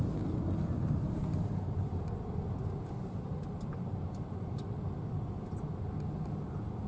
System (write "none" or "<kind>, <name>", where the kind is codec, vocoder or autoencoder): none